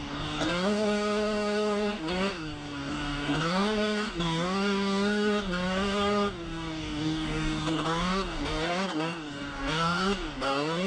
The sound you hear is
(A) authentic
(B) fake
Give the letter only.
B